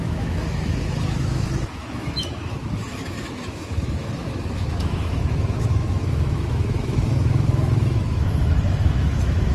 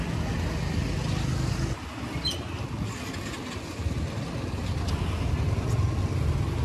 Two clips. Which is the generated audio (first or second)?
first